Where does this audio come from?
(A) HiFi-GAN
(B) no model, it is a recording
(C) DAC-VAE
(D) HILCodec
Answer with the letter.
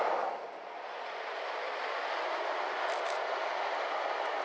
B